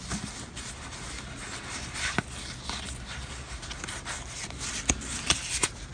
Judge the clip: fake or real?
real